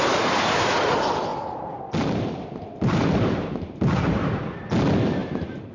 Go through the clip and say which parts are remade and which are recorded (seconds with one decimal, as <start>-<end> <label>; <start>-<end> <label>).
0.0-1.3 recorded; 1.3-4.6 remade; 4.6-5.2 recorded; 5.2-5.7 remade